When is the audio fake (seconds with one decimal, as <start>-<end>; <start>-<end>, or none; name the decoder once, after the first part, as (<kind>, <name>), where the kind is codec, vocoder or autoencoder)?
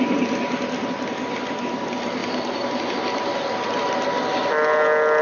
none